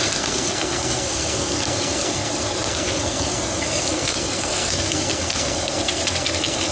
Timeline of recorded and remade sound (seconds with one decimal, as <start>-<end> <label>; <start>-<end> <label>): 0.0-6.7 remade